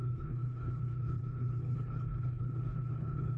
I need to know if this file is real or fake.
fake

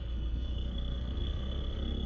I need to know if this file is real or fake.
fake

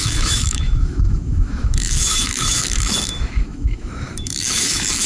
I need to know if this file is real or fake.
fake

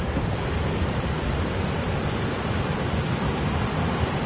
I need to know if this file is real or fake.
real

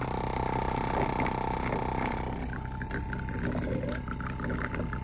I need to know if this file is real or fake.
real